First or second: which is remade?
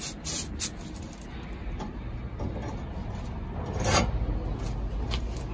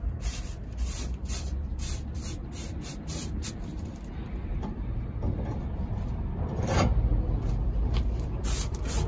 second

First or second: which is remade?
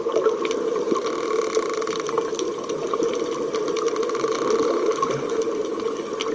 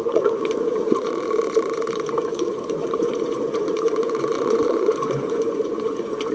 second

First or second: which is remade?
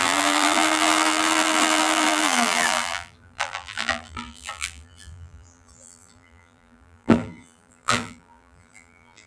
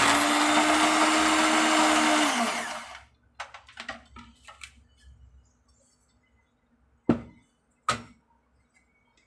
first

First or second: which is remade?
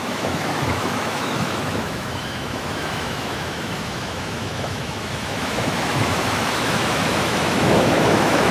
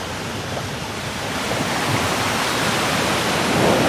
first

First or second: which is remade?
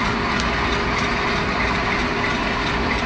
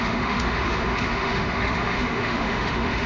second